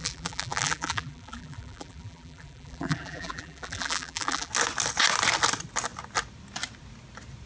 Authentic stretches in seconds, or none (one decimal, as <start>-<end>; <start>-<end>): 4.5-7.5